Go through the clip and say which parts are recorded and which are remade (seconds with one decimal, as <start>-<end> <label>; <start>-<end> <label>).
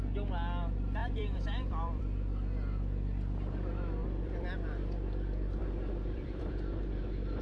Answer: 0.0-1.0 recorded; 1.0-2.0 remade; 2.0-4.0 recorded; 4.0-4.5 remade; 4.5-5.6 recorded; 5.6-7.4 remade